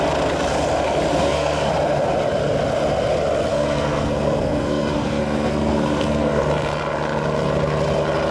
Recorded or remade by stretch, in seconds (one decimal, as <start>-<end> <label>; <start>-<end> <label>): 0.0-1.1 recorded; 1.1-1.7 remade; 1.7-3.5 recorded; 3.5-6.4 remade; 6.4-8.3 recorded